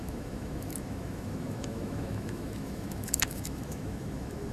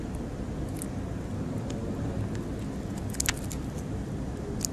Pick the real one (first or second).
second